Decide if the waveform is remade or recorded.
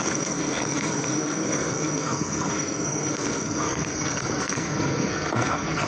remade